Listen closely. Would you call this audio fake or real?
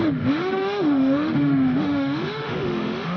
fake